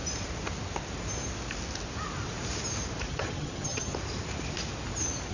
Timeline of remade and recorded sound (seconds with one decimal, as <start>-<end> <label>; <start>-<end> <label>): 0.0-3.1 recorded; 3.1-3.9 remade; 3.9-5.3 recorded